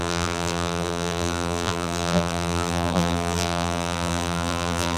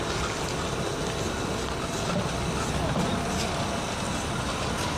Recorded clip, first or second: second